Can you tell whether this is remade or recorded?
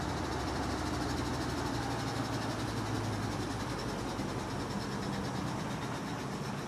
recorded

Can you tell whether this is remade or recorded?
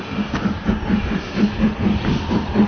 recorded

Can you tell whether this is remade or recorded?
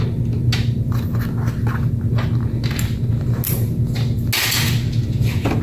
recorded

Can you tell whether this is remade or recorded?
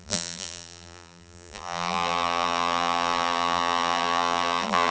remade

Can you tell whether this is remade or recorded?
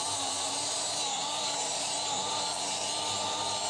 remade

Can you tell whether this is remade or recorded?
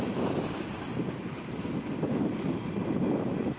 recorded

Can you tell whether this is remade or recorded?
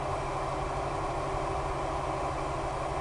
recorded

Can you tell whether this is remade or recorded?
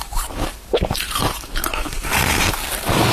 remade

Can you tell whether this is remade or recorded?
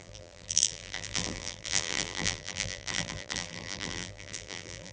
remade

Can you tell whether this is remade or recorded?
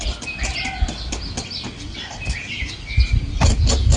recorded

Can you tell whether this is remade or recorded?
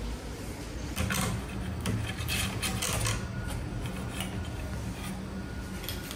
recorded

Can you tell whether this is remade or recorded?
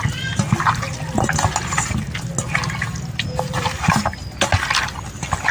recorded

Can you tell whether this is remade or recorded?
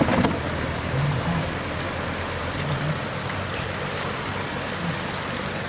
remade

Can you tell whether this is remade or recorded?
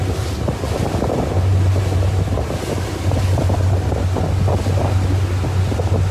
recorded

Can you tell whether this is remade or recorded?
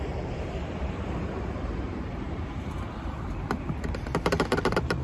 remade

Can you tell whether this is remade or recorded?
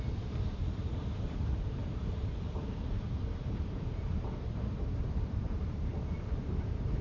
remade